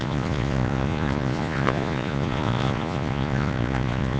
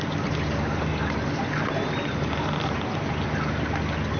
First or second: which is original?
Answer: second